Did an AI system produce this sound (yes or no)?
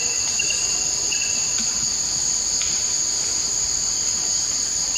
no